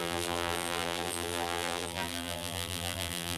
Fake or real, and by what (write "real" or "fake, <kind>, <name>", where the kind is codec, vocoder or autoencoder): fake, vocoder, BigVGAN v2